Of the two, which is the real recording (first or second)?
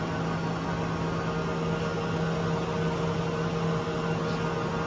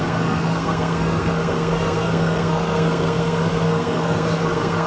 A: first